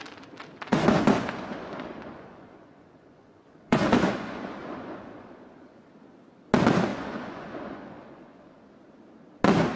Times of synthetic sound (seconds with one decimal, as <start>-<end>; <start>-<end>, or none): 0.7-5.9; 6.9-8.6